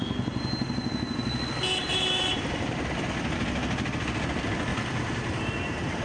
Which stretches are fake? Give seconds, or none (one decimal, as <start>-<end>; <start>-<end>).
1.8-3.0; 4.7-6.0